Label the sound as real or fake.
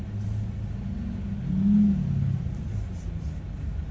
real